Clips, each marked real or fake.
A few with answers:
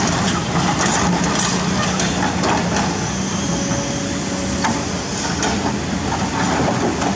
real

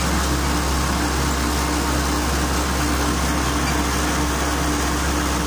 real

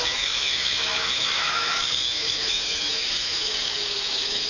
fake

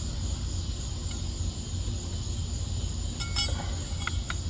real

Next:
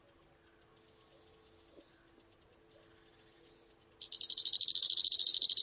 real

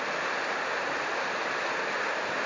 real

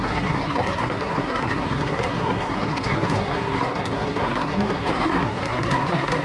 fake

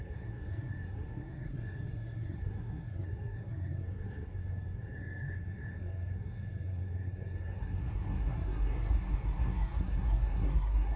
fake